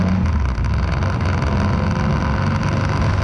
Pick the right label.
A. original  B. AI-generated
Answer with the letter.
A